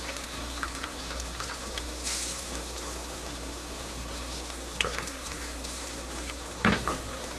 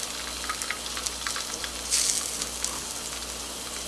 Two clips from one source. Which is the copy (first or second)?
first